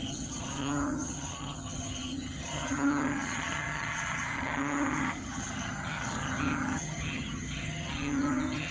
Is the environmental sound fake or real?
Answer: fake